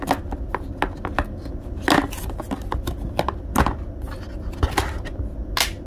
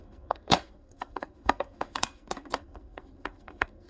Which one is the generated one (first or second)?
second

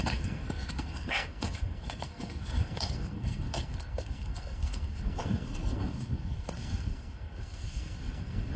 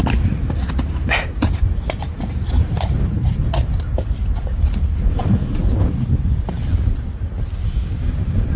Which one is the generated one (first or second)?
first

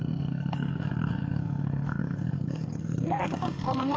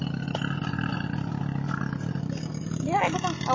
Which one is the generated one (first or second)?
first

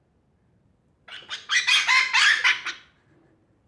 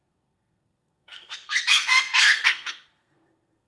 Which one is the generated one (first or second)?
second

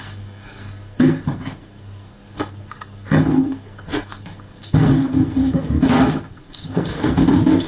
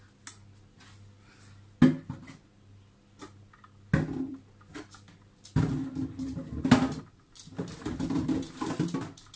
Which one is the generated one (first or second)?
first